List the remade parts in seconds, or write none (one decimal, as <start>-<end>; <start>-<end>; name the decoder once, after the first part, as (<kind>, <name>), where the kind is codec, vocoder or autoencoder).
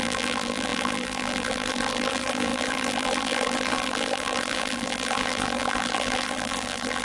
0.0-7.0 (vocoder, BigVGAN v2)